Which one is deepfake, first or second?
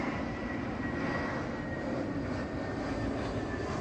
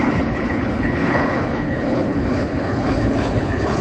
second